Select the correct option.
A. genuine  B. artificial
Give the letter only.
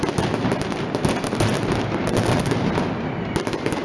A